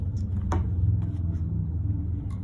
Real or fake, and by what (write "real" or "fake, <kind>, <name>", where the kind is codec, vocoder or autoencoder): real